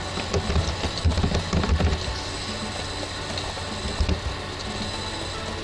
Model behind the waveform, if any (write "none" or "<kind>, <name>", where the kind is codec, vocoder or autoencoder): none